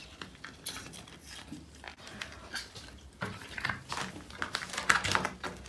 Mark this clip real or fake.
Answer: fake